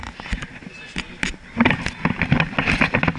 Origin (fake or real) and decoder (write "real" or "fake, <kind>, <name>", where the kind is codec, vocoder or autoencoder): real